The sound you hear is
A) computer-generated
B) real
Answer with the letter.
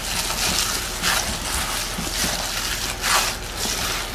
B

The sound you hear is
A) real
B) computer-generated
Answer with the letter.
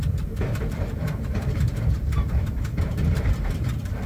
B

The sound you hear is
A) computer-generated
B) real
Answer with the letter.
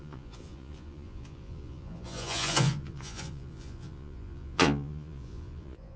A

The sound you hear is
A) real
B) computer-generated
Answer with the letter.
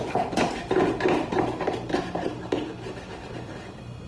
A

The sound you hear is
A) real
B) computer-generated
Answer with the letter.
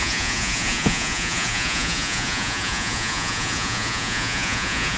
B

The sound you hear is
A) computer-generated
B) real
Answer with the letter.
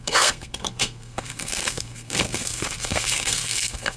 A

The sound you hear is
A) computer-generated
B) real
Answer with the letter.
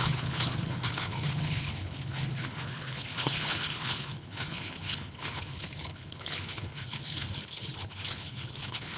A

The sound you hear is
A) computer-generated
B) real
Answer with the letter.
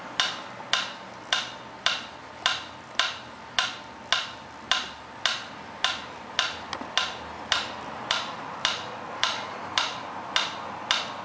B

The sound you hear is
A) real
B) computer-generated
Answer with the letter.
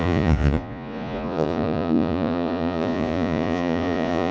B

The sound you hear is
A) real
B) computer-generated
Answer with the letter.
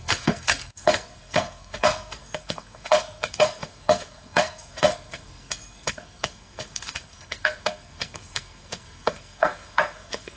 B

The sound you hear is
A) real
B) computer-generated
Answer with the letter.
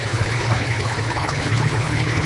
B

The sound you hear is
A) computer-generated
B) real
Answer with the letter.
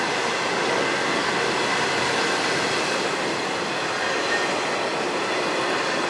B